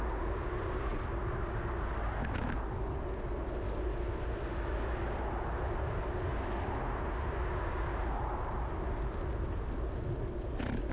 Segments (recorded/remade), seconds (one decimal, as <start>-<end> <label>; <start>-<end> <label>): 0.0-10.9 recorded